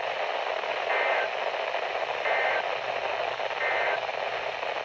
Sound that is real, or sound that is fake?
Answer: real